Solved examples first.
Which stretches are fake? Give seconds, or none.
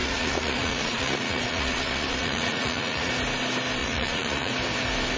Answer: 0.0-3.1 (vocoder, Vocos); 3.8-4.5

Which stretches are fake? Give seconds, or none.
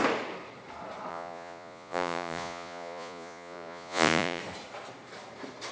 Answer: 1.1-4.4 (vocoder, Vocos)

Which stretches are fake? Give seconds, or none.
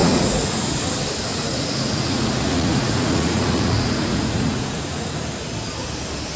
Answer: 0.0-0.7 (vocoder, Vocos); 1.3-5.1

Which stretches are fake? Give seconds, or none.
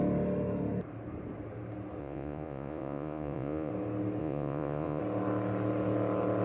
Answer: 2.0-3.7 (vocoder, Vocos); 4.2-5.0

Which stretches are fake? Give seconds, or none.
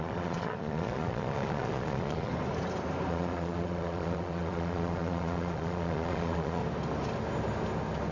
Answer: 0.0-2.3 (vocoder, Vocos); 3.1-6.6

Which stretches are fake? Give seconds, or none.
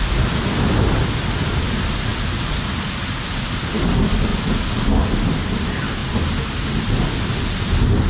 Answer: none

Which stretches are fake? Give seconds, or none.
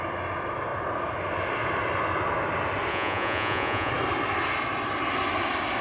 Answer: 2.9-3.9 (vocoder, Vocos)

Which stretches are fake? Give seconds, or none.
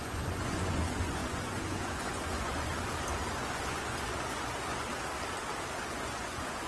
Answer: 0.0-2.7 (vocoder, Vocos); 3.3-4.9; 5.8-6.7